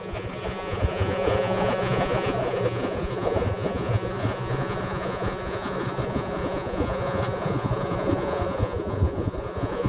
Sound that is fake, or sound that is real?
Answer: fake